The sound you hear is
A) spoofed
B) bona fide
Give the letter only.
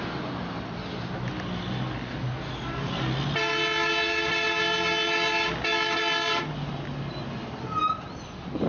B